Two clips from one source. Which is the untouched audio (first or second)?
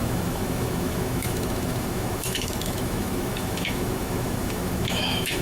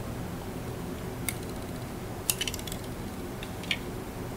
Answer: second